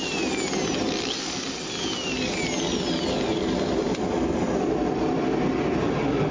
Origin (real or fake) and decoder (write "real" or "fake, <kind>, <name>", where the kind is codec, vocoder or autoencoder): real